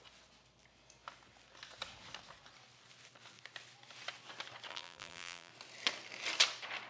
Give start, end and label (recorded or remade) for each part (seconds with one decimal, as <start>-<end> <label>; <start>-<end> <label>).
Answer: 0.0-4.7 recorded; 4.7-5.5 remade; 5.5-6.9 recorded